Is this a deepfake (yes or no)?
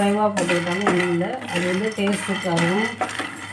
yes